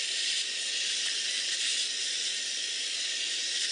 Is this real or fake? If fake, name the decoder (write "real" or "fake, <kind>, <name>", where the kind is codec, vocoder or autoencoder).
real